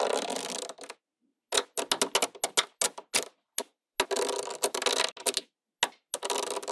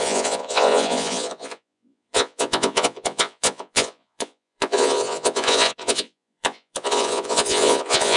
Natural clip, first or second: first